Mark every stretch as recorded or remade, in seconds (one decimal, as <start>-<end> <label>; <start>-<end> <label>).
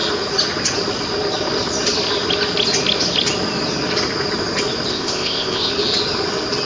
0.0-4.9 recorded; 4.9-5.7 remade; 5.7-6.7 recorded